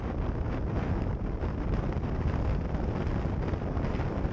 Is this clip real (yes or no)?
yes